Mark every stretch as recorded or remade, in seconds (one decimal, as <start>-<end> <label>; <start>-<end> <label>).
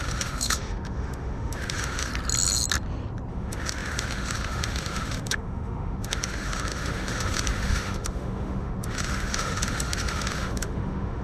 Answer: 0.0-2.1 remade; 2.1-3.3 recorded; 3.3-11.2 remade